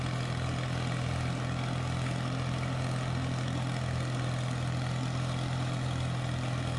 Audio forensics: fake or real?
real